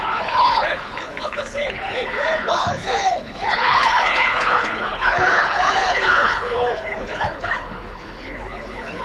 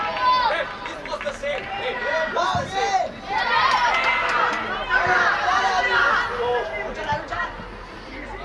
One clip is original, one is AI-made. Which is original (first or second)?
second